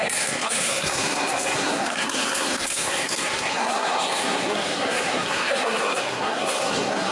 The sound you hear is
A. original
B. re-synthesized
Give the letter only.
B